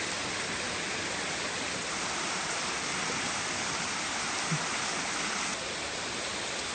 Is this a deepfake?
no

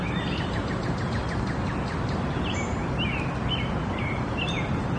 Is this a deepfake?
no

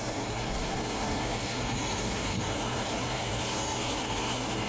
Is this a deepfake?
yes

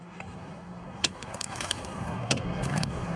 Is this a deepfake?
yes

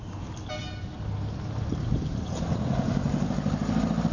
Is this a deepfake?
no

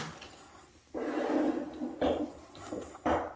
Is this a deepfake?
no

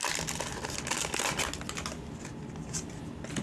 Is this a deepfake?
no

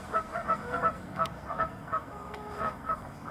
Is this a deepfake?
yes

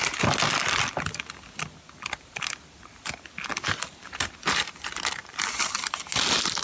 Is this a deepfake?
no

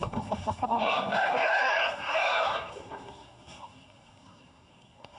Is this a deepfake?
yes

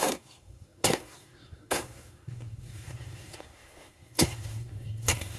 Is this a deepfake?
yes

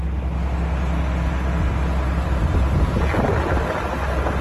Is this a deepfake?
no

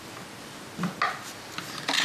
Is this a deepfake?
no